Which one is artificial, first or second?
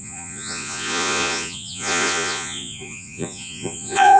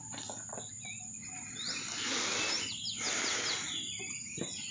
first